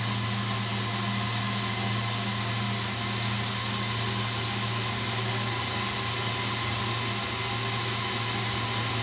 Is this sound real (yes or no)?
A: yes